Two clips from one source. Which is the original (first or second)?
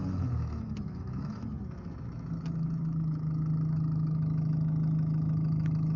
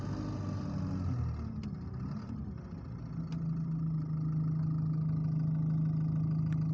second